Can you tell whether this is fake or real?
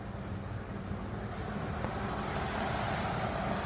real